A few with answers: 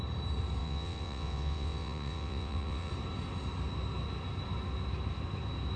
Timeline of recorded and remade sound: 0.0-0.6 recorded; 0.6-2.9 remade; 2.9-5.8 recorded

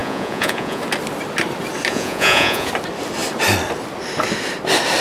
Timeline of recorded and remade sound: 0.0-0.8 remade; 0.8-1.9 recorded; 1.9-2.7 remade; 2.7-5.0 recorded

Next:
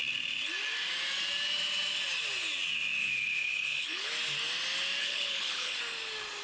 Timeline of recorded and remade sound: 0.0-3.0 recorded; 3.0-4.1 remade; 4.1-5.0 recorded; 5.0-5.8 remade; 5.8-6.4 recorded

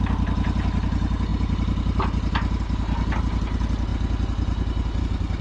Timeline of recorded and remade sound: 0.0-5.4 recorded

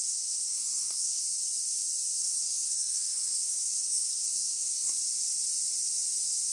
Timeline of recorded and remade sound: 0.0-1.2 remade; 1.2-2.2 recorded; 2.2-5.0 remade; 5.0-6.5 recorded

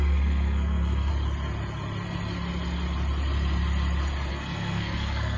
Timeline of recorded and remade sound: 0.0-1.1 remade; 1.1-4.3 recorded; 4.3-5.4 remade

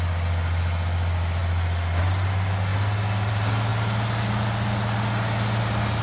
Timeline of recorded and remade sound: 0.0-6.0 recorded

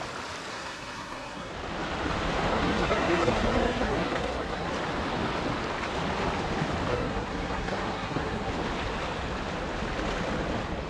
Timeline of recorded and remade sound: 0.0-0.5 recorded; 0.5-1.5 remade; 1.5-2.5 recorded; 2.5-4.7 remade; 4.7-6.9 recorded; 6.9-8.5 remade; 8.5-10.9 recorded